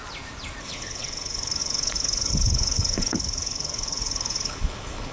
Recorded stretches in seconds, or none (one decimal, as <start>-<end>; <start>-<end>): 0.0-0.6